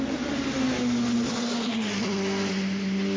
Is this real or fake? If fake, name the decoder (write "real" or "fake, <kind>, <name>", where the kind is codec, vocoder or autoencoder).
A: real